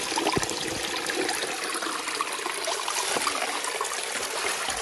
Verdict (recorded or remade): recorded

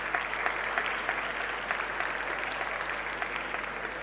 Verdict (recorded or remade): recorded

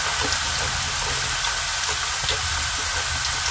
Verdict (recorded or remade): recorded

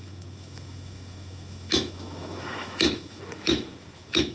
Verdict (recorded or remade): remade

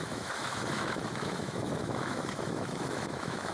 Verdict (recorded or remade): remade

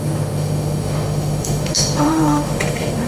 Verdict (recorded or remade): remade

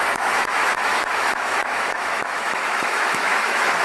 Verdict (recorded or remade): remade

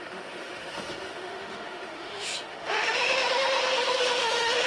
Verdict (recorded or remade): remade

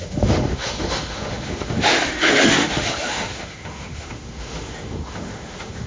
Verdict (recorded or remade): remade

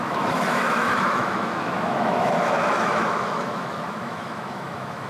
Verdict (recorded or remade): remade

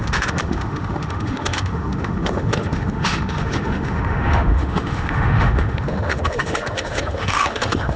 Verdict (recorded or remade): remade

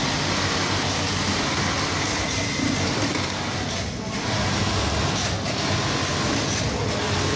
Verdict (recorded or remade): recorded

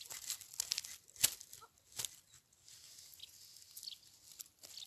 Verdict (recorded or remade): recorded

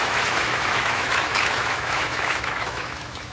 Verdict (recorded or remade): remade